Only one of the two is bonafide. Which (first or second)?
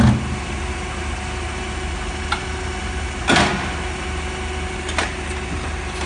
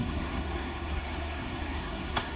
first